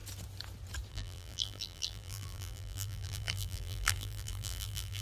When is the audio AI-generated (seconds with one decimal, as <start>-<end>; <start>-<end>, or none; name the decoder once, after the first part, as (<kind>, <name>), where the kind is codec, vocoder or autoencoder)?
0.9-5.0 (vocoder, BigVGAN v2)